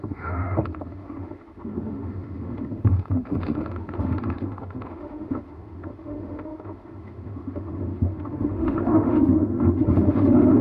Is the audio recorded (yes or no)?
no